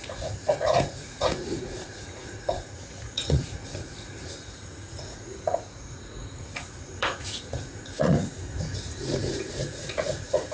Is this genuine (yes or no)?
no